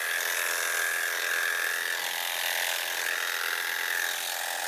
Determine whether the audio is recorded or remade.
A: recorded